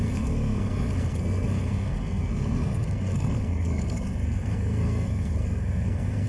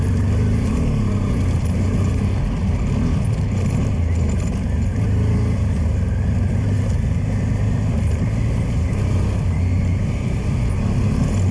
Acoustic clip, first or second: second